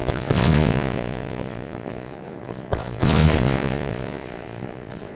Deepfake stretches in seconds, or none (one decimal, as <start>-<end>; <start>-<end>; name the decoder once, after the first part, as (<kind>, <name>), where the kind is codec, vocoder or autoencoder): 0.0-5.2 (vocoder, Vocos)